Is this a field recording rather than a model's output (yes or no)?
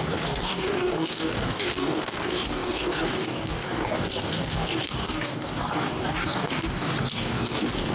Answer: no